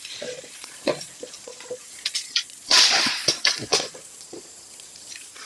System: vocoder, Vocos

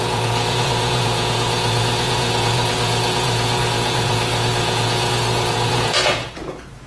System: vocoder, Vocos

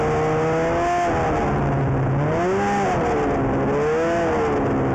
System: none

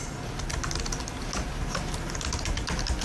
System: none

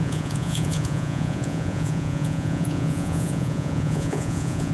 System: vocoder, Vocos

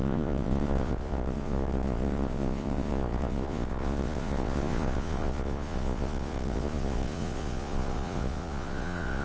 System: vocoder, Vocos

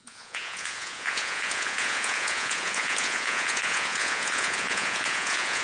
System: vocoder, Vocos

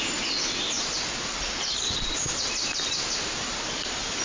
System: none